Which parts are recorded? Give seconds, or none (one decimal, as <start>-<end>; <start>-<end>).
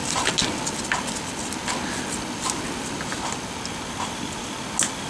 0.0-5.1